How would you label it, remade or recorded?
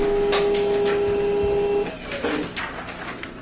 recorded